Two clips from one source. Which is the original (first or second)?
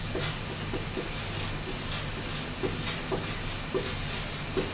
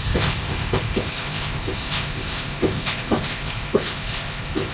first